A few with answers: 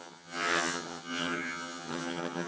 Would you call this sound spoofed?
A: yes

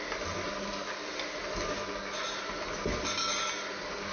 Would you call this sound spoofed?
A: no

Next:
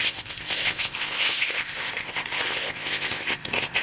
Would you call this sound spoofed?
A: yes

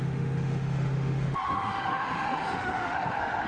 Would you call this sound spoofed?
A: yes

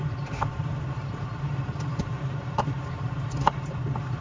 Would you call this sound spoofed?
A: yes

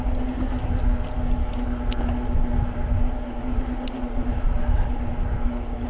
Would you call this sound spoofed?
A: no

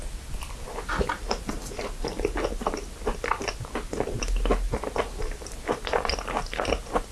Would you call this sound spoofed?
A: no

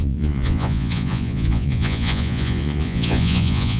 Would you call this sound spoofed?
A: yes